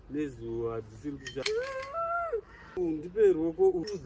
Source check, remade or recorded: recorded